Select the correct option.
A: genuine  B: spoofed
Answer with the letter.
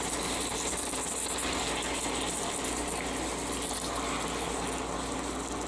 A